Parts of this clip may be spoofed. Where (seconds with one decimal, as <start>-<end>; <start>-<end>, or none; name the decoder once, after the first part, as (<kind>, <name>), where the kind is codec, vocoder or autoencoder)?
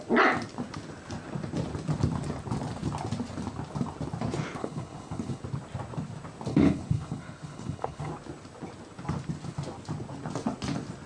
4.6-5.4 (codec, HILCodec); 6.5-8.1